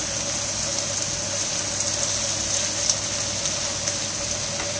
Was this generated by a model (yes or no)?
no